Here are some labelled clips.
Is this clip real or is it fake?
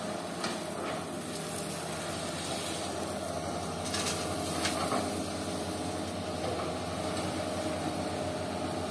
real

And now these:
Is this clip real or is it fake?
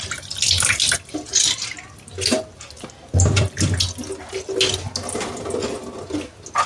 real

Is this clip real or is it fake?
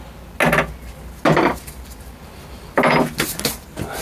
real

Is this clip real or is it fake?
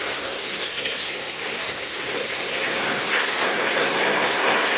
fake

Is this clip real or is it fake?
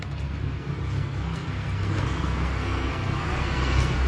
fake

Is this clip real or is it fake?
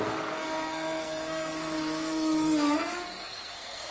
fake